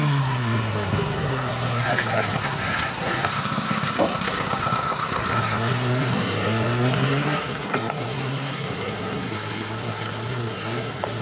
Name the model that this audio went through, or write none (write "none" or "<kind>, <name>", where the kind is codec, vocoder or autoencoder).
codec, SNAC